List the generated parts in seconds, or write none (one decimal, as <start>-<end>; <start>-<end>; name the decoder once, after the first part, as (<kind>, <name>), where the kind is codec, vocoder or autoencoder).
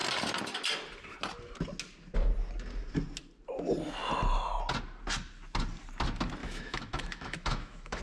6.4-8.0 (autoencoder, DAC-VAE)